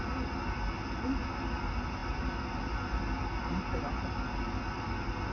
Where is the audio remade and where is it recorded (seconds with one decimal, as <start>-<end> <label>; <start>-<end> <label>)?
0.0-5.3 recorded